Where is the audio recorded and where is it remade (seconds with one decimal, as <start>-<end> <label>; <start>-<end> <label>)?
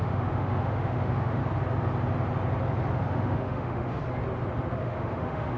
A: 0.0-1.4 remade; 1.4-3.1 recorded; 3.1-4.0 remade; 4.0-4.8 recorded; 4.8-5.6 remade